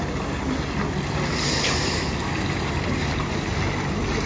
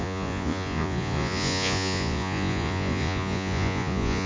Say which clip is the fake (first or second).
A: second